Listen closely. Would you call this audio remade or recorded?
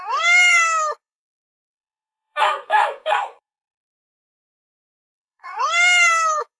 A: remade